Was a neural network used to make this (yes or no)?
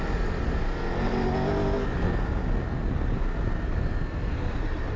no